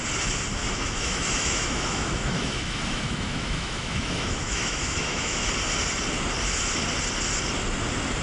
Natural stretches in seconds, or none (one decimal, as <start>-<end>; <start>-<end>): 0.0-0.6; 5.5-8.2